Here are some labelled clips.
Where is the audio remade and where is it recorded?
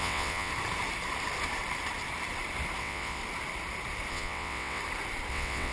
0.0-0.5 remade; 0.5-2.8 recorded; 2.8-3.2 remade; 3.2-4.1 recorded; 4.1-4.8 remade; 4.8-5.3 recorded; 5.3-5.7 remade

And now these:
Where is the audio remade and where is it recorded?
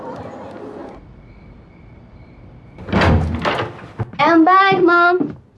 0.0-5.6 recorded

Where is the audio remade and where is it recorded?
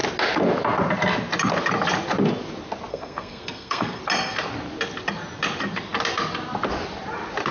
0.0-2.9 recorded; 2.9-4.0 remade; 4.0-7.5 recorded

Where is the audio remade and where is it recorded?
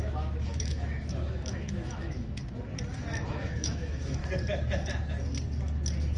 0.0-2.4 remade; 2.4-3.3 recorded; 3.3-4.2 remade; 4.2-6.2 recorded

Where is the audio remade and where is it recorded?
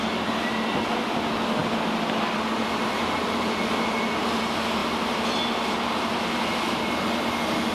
0.0-7.7 recorded